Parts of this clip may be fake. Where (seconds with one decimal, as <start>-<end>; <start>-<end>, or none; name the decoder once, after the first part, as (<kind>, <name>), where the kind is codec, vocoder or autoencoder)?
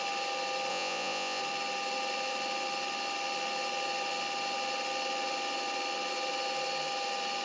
0.7-1.4 (vocoder, Vocos)